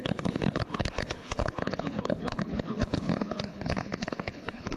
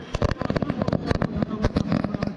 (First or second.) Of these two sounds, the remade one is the first